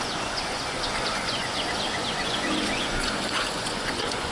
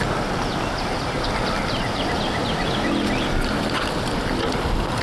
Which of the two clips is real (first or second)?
second